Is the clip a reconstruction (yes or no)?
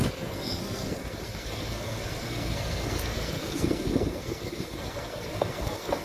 yes